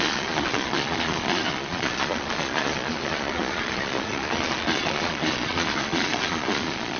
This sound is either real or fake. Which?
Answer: fake